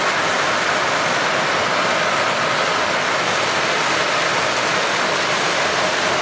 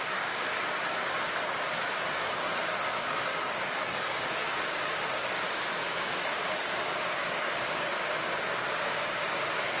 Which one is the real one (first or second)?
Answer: first